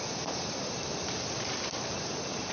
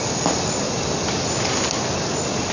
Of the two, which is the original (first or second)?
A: second